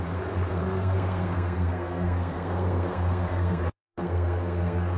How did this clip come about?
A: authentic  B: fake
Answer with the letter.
B